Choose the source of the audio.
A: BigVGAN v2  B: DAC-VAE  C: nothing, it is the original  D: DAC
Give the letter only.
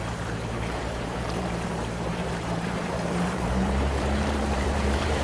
A